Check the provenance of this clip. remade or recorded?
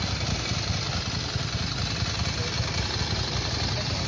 recorded